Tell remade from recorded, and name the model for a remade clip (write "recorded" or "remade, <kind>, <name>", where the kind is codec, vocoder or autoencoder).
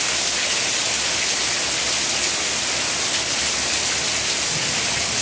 recorded